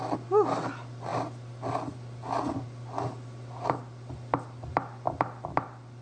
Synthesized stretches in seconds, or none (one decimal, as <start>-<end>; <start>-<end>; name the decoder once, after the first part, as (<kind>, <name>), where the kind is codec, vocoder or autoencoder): none